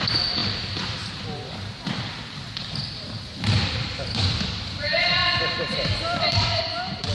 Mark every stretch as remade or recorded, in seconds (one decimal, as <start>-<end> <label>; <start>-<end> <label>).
0.0-0.4 remade; 0.4-2.5 recorded; 2.5-7.1 remade